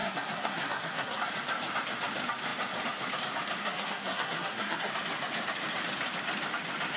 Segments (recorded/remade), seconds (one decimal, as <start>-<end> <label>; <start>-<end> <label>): 0.0-1.2 remade; 1.2-3.6 recorded; 3.6-4.9 remade; 4.9-7.0 recorded